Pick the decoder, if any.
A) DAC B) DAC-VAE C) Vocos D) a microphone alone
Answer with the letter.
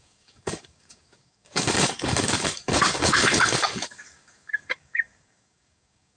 A